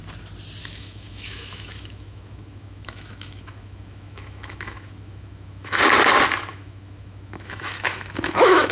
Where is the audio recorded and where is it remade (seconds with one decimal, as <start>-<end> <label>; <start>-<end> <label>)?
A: 0.0-0.6 recorded; 0.6-5.8 remade; 5.8-6.5 recorded; 6.5-8.7 remade